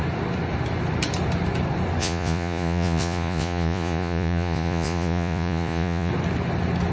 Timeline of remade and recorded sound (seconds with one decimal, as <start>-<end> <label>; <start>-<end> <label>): 0.0-2.0 recorded; 2.0-6.1 remade; 6.1-6.9 recorded